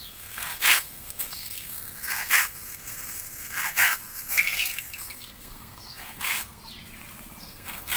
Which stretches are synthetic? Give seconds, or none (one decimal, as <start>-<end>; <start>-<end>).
0.0-6.6; 7.4-8.0